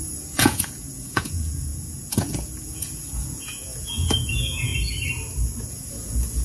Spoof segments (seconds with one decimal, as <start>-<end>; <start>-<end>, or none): 0.0-4.7; 5.7-6.4